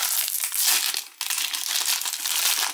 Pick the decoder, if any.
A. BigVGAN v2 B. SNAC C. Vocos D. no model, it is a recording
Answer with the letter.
D